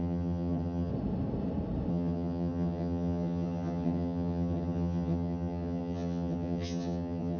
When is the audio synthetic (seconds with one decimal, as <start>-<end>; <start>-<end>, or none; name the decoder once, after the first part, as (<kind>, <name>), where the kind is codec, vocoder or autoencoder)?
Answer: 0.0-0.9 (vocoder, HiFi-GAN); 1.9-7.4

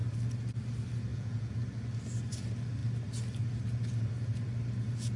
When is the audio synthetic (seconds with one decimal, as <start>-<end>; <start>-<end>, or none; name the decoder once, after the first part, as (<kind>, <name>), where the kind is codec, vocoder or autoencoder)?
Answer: 1.1-1.6 (vocoder, Vocos)

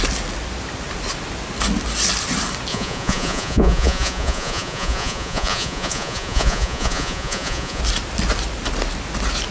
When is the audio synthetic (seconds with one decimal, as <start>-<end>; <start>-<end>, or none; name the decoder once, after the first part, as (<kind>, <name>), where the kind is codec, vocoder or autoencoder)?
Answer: 2.7-7.8 (vocoder, Vocos)

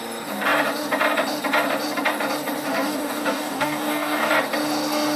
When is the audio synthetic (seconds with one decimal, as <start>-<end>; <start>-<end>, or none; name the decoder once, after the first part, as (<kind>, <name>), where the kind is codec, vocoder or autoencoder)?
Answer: 2.7-4.3 (codec, DAC)

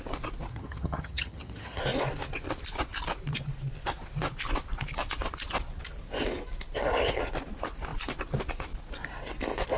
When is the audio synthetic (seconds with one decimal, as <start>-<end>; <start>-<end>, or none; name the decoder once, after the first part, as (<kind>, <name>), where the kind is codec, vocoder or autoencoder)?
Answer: 0.5-1.8 (vocoder, HiFi-GAN)

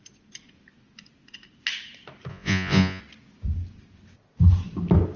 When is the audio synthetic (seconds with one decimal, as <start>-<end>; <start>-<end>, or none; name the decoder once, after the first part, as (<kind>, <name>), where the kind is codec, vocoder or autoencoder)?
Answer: 2.3-3.0 (vocoder, Vocos)

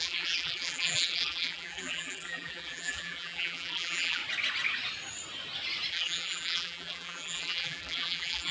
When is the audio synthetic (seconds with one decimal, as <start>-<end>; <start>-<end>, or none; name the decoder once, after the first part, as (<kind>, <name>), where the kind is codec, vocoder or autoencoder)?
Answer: 0.0-4.2 (vocoder, BigVGAN v2); 5.9-8.5